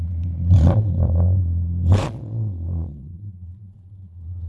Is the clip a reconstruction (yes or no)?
yes